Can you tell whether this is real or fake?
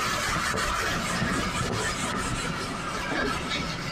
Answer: real